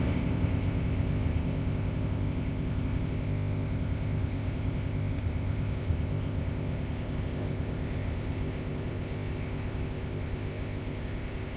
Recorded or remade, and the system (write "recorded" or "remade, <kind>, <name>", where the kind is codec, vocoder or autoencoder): remade, codec, ZipCodec